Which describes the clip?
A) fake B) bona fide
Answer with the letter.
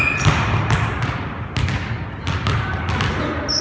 B